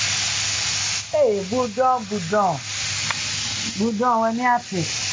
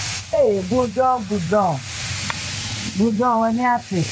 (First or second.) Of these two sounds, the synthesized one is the second